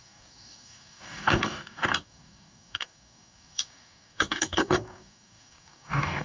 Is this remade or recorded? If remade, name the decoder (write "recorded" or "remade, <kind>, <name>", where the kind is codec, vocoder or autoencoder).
remade, codec, DAC